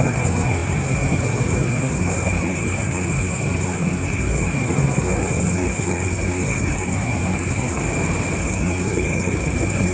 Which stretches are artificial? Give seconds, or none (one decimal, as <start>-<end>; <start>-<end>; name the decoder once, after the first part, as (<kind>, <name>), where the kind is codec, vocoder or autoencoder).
0.0-7.8 (codec, SNAC); 8.4-9.9